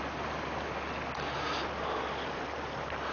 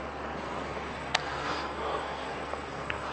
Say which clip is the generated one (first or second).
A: second